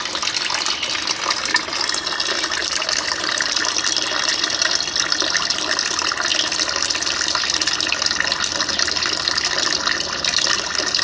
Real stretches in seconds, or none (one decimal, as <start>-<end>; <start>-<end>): 0.0-2.6; 4.3-11.0